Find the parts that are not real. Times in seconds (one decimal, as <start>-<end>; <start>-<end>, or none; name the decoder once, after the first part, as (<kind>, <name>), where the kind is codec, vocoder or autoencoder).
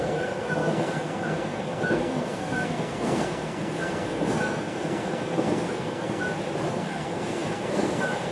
0.0-6.2 (codec, SNAC); 6.7-8.3